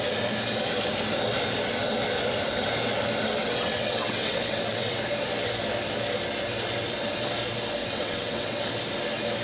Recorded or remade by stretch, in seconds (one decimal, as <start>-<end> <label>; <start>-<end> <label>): 0.0-3.4 recorded; 3.4-5.0 remade; 5.0-7.8 recorded; 7.8-8.7 remade; 8.7-9.4 recorded